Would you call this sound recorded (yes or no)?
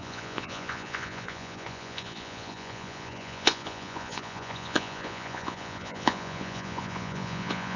no